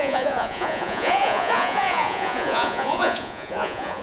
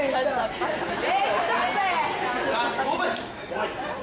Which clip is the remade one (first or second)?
first